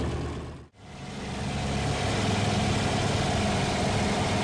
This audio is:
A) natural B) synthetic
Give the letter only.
A